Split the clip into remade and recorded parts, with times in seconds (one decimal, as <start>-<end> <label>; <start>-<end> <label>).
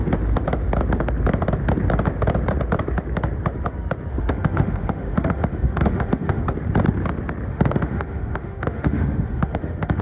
0.0-4.1 recorded; 4.1-6.4 remade; 6.4-7.5 recorded; 7.5-10.0 remade